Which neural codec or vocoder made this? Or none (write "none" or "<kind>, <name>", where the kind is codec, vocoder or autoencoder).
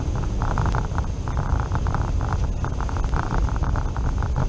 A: none